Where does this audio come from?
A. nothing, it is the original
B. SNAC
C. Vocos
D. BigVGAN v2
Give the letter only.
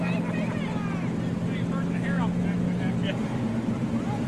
A